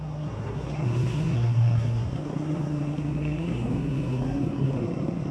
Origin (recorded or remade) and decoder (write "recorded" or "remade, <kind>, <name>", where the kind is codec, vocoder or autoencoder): remade, codec, SNAC